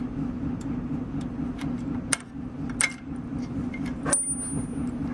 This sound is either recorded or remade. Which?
recorded